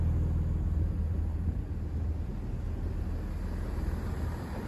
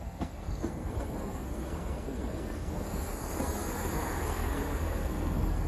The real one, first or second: first